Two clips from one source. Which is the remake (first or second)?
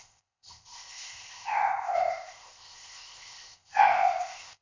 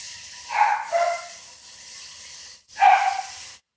first